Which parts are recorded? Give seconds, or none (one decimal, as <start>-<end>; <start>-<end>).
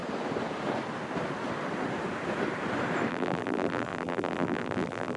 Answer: 0.0-3.1